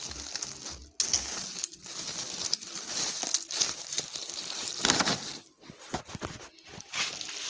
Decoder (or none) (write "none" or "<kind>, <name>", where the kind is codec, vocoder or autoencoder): none